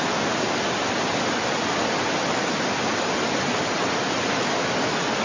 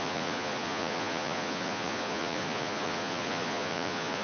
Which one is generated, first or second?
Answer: second